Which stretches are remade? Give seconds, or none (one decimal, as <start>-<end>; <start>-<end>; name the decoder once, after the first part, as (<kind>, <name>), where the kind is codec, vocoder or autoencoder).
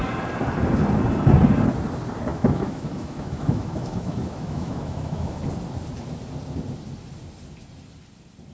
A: 2.3-5.4 (autoencoder, DAC-VAE)